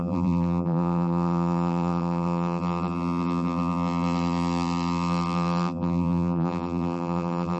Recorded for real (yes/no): no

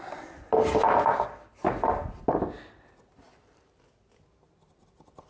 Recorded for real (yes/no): yes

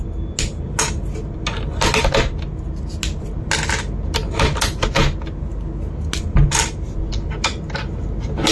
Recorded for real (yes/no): yes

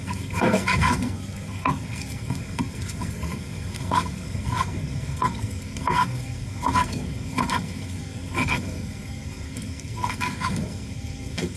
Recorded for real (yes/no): no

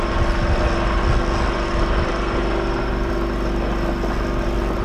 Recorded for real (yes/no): yes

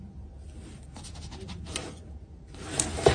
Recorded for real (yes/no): yes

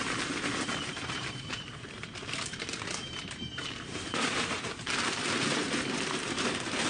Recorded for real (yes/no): no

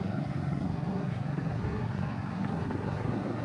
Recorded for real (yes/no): no